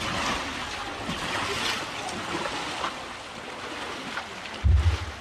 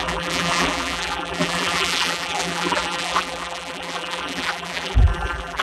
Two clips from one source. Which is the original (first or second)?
first